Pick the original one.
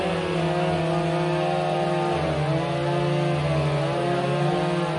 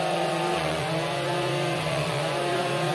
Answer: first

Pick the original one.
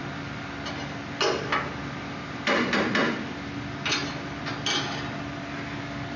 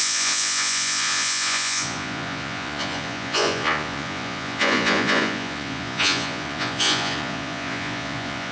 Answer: first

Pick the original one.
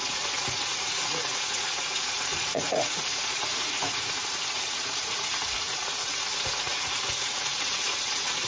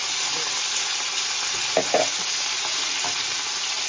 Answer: second